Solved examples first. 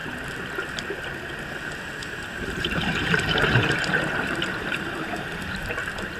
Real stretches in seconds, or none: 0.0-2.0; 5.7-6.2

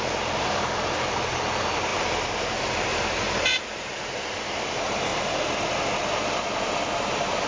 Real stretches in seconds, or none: 5.1-6.4

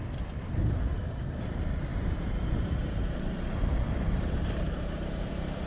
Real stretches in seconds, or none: 0.0-1.9; 5.3-5.7

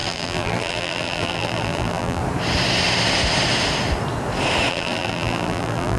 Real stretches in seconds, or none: 2.2-4.7

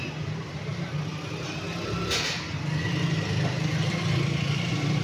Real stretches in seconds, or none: 0.7-3.7